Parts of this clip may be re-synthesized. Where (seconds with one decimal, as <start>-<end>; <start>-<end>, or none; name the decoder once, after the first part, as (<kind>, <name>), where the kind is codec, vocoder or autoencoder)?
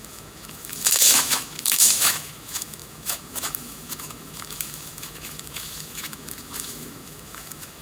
0.0-7.8 (autoencoder, DAC-VAE)